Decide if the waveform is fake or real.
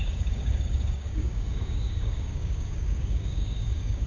fake